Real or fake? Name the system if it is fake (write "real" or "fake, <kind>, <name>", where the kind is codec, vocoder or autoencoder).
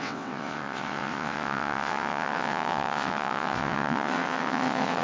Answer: fake, vocoder, WaveNeXt